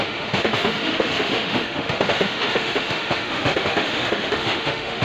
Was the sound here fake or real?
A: fake